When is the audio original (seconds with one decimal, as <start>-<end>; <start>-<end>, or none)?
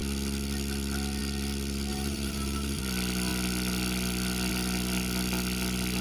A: 0.0-1.9; 2.8-6.0